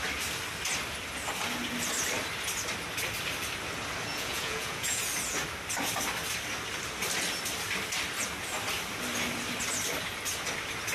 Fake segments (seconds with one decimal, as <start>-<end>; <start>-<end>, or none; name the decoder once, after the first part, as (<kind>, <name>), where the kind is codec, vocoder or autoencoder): 4.1-5.1 (vocoder, Vocos)